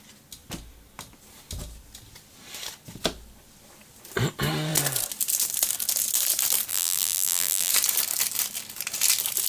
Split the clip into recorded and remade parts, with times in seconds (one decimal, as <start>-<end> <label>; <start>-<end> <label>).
0.0-6.7 recorded; 6.7-7.7 remade; 7.7-9.5 recorded